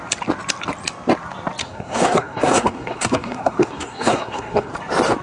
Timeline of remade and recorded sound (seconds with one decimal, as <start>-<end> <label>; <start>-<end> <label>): 0.0-1.6 recorded; 1.6-4.7 remade; 4.7-5.2 recorded